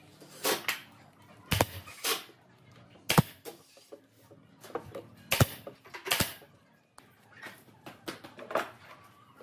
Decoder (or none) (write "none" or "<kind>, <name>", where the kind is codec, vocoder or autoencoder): none